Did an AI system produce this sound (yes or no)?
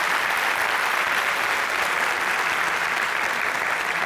no